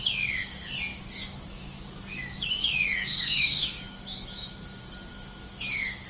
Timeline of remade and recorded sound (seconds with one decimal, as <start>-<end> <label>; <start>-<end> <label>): 0.0-0.9 recorded; 0.9-4.6 remade; 4.6-5.1 recorded; 5.1-6.1 remade